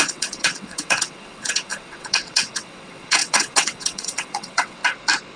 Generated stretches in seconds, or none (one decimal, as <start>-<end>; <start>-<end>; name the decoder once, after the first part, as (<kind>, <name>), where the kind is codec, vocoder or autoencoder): 0.0-4.8 (vocoder, WaveNeXt)